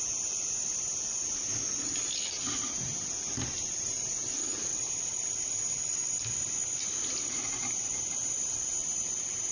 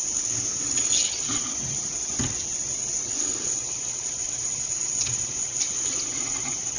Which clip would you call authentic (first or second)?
first